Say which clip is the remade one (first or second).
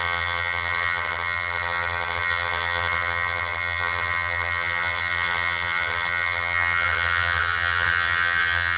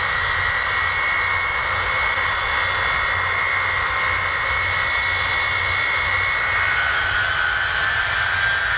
first